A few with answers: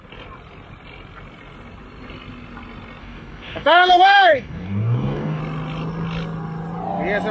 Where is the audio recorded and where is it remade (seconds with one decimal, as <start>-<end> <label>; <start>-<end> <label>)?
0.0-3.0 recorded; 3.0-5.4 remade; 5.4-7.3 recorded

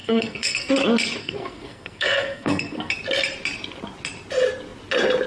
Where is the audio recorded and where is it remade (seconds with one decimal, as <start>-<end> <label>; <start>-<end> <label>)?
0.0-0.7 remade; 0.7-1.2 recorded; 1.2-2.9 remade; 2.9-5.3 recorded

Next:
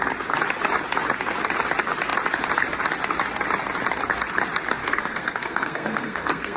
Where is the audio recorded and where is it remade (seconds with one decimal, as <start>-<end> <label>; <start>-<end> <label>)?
0.0-4.8 recorded; 4.8-6.6 remade